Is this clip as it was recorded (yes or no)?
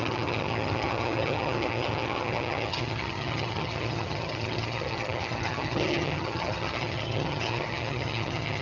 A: no